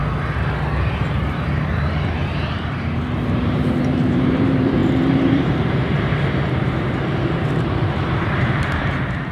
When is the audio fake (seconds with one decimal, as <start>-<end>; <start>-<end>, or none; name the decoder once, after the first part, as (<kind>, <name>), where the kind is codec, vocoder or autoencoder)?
1.0-9.3 (vocoder, BigVGAN v2)